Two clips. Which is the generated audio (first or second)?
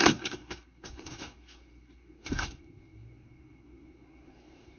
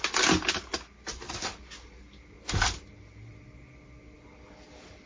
first